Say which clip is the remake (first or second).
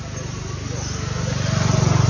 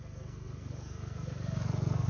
second